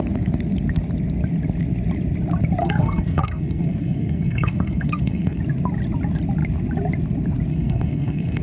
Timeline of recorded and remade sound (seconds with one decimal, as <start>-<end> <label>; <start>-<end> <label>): 0.0-2.6 recorded; 2.6-5.4 remade; 5.4-7.5 recorded; 7.5-8.4 remade